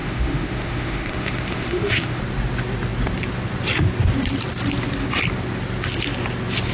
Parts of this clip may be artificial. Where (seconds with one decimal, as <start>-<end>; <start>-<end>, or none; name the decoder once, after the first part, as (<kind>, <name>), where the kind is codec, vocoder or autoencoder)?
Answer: 0.0-2.2 (autoencoder, DAC-VAE)